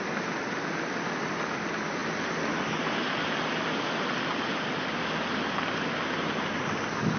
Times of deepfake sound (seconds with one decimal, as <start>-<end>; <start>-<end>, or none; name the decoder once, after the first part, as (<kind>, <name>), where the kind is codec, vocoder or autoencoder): none